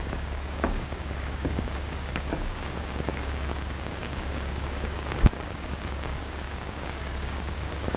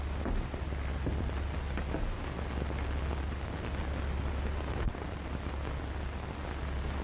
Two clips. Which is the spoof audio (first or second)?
first